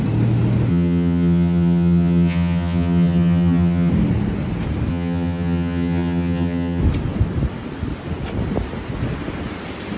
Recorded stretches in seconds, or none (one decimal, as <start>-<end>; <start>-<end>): 0.0-0.7; 3.9-4.9; 6.8-10.0